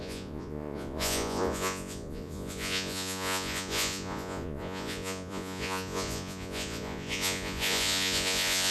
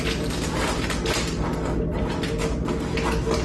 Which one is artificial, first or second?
first